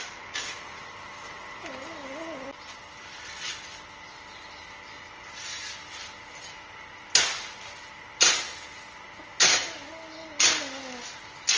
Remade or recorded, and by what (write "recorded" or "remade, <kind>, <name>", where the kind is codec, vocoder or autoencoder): recorded